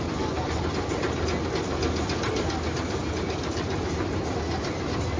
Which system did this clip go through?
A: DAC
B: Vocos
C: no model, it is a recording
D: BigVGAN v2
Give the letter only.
C